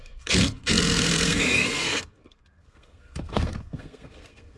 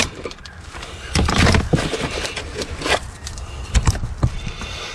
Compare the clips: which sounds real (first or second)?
second